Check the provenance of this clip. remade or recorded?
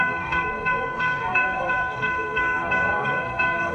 remade